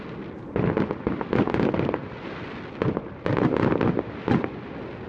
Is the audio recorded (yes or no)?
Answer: yes